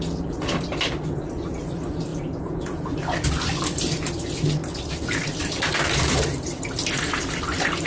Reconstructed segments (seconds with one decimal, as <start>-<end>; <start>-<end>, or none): 2.1-2.9